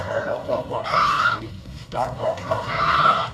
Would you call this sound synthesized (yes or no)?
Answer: yes